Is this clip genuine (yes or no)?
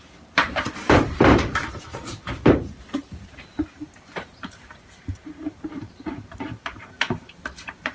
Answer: no